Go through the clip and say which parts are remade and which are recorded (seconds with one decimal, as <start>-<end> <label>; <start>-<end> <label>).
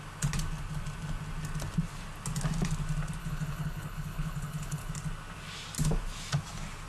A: 0.0-3.2 recorded; 3.2-4.9 remade; 4.9-6.9 recorded